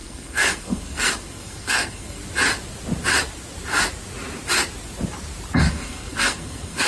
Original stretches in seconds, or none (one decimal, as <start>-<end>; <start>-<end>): 2.2-5.6